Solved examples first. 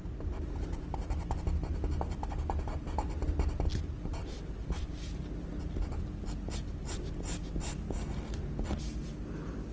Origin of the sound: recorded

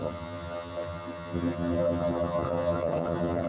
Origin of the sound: remade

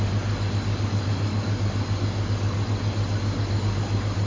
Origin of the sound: recorded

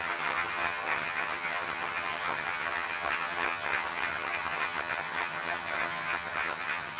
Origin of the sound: remade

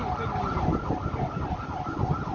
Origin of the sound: recorded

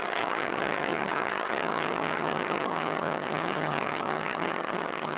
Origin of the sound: remade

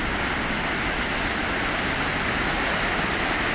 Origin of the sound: recorded